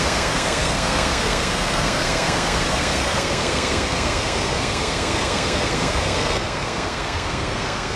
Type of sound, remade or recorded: remade